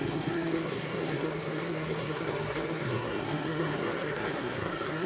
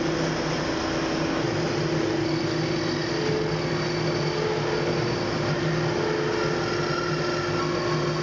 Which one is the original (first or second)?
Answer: second